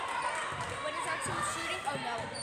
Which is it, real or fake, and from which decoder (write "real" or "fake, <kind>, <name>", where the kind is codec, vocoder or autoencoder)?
real